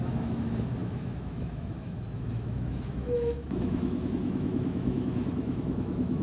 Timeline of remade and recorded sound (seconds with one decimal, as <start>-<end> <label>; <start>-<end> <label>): 0.0-6.2 remade